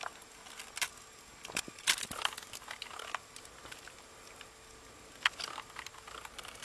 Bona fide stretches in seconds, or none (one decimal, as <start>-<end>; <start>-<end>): 0.0-6.6

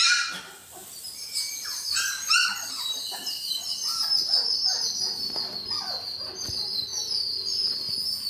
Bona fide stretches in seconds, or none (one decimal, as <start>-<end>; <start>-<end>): 0.0-8.3